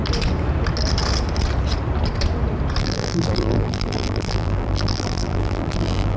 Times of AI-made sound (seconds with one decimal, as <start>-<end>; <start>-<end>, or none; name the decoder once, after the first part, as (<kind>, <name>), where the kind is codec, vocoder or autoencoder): 2.8-6.2 (vocoder, BigVGAN v2)